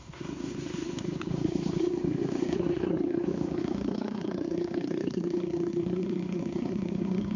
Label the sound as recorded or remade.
remade